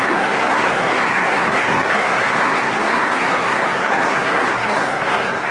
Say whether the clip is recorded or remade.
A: remade